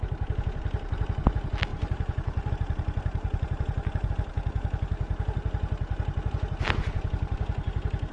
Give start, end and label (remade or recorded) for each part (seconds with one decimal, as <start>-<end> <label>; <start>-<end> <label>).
0.0-1.7 recorded; 1.7-4.1 remade; 4.1-8.1 recorded